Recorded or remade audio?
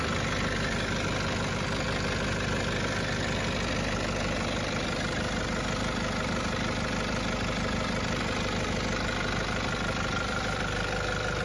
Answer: recorded